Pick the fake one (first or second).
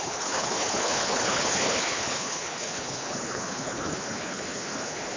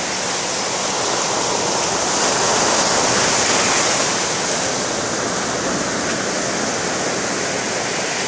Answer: first